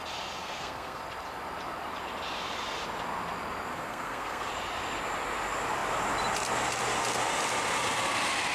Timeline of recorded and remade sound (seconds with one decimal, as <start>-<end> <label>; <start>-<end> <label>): 0.0-0.4 recorded; 0.4-1.0 remade; 1.0-3.7 recorded; 3.7-4.5 remade; 4.5-8.5 recorded